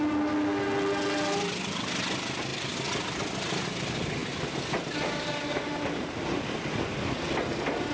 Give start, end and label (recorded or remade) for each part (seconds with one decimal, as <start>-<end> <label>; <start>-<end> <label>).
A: 0.0-7.9 recorded